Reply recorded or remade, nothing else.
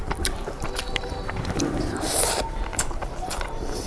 remade